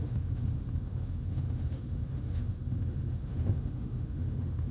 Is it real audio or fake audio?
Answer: fake